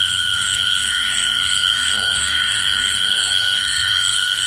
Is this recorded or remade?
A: remade